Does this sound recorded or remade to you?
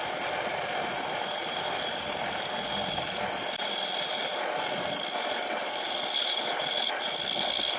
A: recorded